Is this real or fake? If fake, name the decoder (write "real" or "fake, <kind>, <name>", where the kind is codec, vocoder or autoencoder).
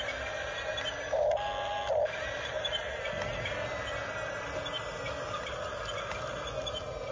real